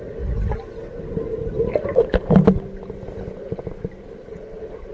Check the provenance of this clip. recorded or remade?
recorded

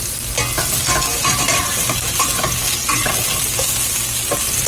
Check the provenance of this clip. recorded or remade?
recorded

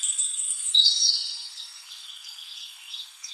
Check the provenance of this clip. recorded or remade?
remade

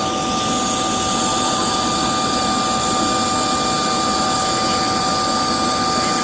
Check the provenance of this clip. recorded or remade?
recorded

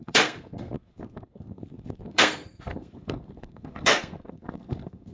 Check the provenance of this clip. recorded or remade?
remade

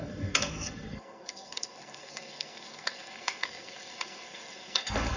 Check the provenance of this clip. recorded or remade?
remade